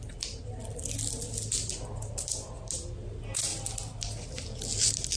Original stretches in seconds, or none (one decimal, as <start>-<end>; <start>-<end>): 0.0-5.2